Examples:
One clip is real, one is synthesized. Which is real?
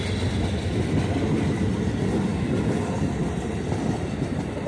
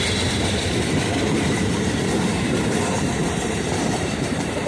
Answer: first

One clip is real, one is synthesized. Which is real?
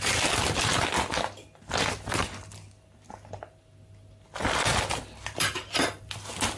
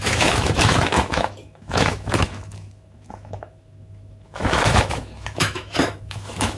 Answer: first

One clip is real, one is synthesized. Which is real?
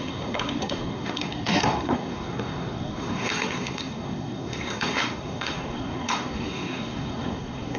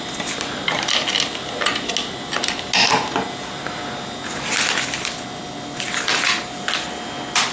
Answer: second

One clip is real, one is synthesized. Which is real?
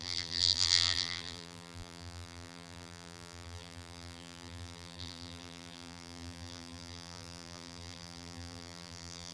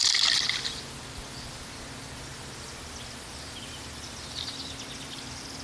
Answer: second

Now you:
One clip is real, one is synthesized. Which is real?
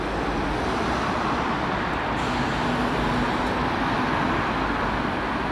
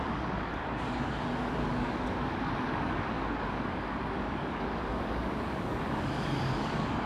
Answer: first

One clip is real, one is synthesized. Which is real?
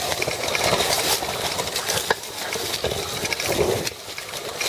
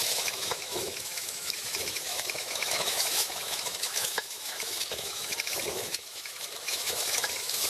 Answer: first